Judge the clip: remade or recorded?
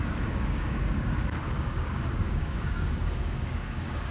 remade